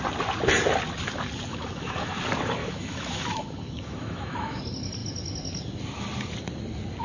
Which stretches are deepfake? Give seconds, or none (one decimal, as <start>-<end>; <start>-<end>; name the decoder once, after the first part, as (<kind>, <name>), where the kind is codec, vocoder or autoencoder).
1.5-2.2 (autoencoder, DAC-VAE); 2.6-4.6